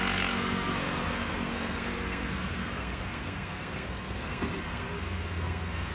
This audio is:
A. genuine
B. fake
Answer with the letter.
B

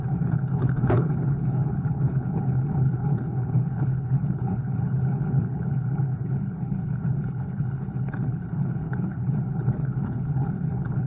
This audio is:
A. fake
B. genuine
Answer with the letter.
A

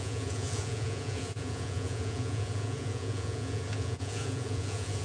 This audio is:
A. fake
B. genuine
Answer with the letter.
A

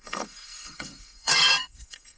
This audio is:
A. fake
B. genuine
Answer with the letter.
A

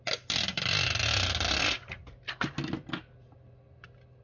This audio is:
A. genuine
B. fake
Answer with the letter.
A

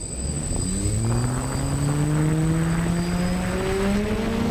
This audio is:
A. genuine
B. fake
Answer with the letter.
A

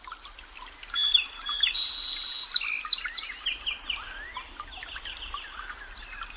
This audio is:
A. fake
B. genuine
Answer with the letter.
B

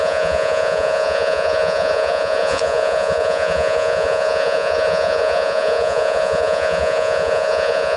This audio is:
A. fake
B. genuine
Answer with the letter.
A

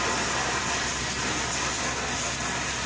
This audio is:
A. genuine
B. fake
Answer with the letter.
A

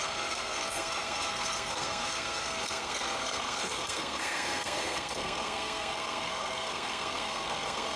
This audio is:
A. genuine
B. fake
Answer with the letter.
B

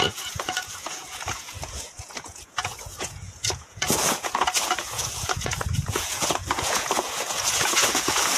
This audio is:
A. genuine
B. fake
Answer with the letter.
B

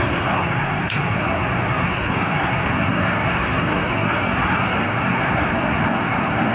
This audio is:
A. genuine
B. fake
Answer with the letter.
B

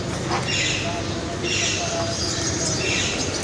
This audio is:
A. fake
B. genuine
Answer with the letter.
B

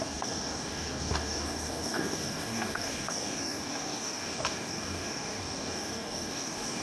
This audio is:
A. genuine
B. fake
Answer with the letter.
B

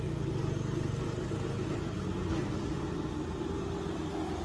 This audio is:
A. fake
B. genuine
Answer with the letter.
B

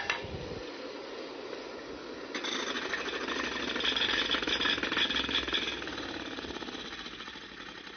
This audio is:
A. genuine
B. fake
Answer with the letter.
A